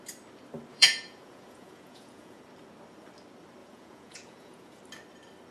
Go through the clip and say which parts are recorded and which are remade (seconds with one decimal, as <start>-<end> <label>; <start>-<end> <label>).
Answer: 0.0-0.7 recorded; 0.7-2.4 remade; 2.4-3.6 recorded; 3.6-4.8 remade; 4.8-5.5 recorded